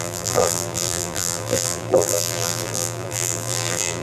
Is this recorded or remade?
remade